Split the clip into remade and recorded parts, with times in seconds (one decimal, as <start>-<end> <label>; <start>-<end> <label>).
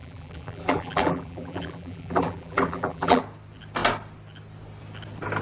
0.0-3.2 remade; 3.2-5.4 recorded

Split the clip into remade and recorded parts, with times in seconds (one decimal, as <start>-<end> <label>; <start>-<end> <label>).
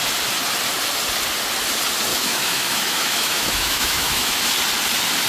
0.0-2.1 recorded; 2.1-4.4 remade; 4.4-5.3 recorded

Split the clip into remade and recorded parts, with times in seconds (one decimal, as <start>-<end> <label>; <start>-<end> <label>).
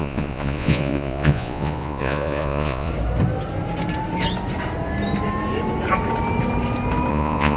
0.0-2.9 remade; 2.9-7.1 recorded; 7.1-7.6 remade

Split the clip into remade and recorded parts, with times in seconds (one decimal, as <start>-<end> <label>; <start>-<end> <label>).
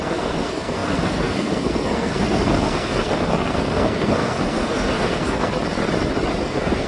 0.0-5.5 remade; 5.5-6.4 recorded; 6.4-6.9 remade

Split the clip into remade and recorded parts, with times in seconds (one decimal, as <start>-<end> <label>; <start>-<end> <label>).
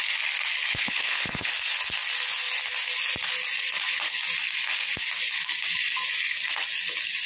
0.0-0.7 recorded; 0.7-1.5 remade; 1.5-7.3 recorded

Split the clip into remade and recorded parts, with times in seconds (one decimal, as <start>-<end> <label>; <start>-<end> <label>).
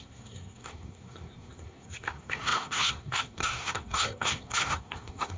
0.0-5.4 remade